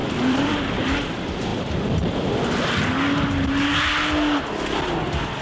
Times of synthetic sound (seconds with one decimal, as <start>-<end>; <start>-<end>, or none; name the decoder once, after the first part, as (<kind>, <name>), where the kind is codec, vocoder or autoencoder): 0.0-0.7 (vocoder, BigVGAN v2)